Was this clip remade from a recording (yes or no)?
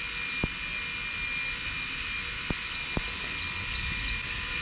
no